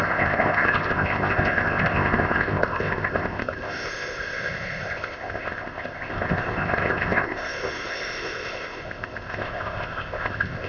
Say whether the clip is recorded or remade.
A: remade